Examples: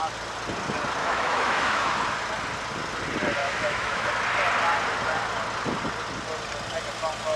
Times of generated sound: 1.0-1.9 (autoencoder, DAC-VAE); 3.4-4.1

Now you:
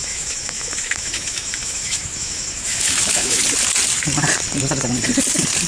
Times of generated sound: 0.0-3.4 (autoencoder, DAC-VAE)

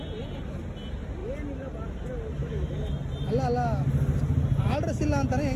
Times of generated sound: 2.4-2.9 (autoencoder, DAC-VAE)

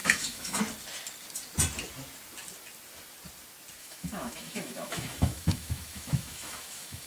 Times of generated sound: 0.0-0.6 (autoencoder, DAC-VAE); 3.8-7.1

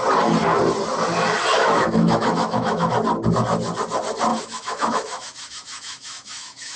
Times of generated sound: 1.5-2.9 (autoencoder, DAC-VAE); 4.3-6.8

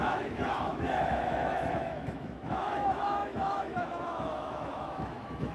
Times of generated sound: 0.0-5.5 (autoencoder, DAC-VAE)

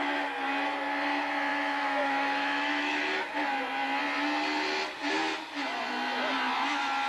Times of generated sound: 1.5-3.0 (autoencoder, DAC-VAE)